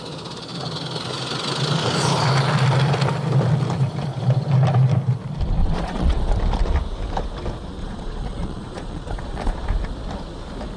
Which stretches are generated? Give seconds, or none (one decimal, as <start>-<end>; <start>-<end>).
5.6-6.3; 7.8-9.7

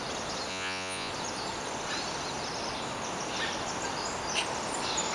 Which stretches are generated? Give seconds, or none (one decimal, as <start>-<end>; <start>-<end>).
0.5-1.1

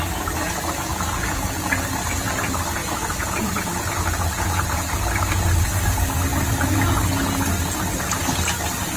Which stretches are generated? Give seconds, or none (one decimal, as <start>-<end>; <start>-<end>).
0.9-1.8; 2.8-4.9

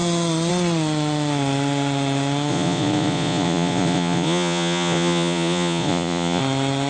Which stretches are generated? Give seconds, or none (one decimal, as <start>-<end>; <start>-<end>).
2.5-6.4

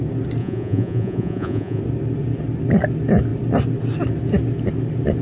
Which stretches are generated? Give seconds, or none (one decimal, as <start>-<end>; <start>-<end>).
0.4-1.8

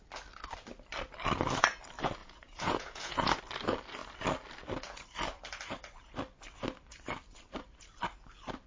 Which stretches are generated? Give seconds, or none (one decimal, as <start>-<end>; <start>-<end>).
2.2-3.4